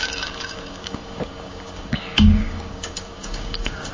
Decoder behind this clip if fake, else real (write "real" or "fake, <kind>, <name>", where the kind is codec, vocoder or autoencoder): fake, codec, DAC